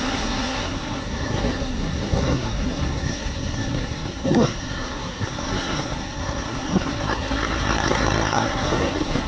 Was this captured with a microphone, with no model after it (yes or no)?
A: no